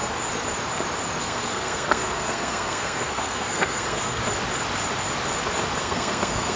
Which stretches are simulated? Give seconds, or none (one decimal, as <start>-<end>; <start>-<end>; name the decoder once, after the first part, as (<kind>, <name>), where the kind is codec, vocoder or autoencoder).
1.2-4.2 (codec, SNAC); 5.8-6.6